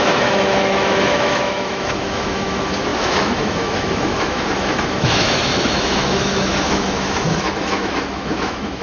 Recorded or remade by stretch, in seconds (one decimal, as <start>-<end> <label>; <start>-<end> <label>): 0.0-8.8 remade